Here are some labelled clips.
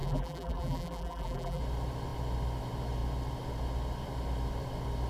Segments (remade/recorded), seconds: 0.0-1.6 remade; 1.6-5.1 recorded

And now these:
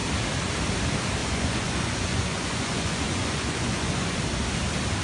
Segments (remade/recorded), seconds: 0.0-1.2 recorded; 1.2-4.2 remade; 4.2-5.0 recorded

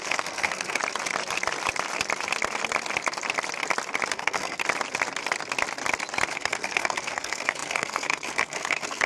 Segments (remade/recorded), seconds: 0.0-0.8 remade; 0.8-4.1 recorded; 4.1-4.6 remade; 4.6-6.3 recorded; 6.3-9.1 remade

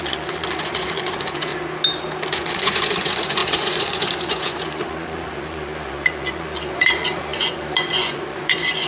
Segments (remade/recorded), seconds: 0.0-1.5 remade; 1.5-2.3 recorded; 2.3-8.9 remade

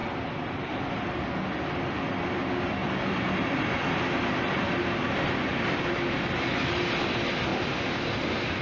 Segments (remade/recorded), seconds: 0.0-0.9 remade; 0.9-2.8 recorded; 2.8-3.8 remade; 3.8-5.5 recorded; 5.5-6.8 remade; 6.8-7.5 recorded; 7.5-8.6 remade

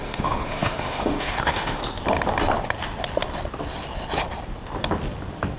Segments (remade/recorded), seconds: 0.0-1.8 remade; 1.8-5.6 recorded

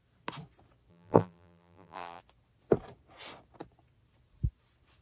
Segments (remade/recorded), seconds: 0.0-0.9 recorded; 0.9-2.2 remade; 2.2-5.0 recorded

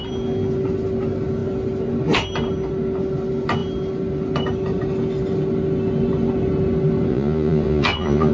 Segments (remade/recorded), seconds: 0.0-7.1 recorded; 7.1-8.3 remade